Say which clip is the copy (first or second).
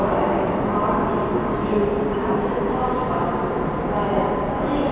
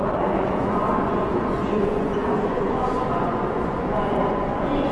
second